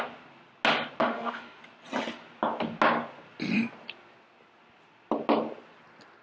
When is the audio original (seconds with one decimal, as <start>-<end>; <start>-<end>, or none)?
0.0-1.0; 1.6-6.2